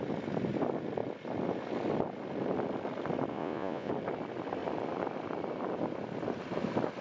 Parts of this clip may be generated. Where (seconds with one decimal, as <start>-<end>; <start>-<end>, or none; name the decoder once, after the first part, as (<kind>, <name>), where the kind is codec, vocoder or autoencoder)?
3.3-3.9 (vocoder, Vocos)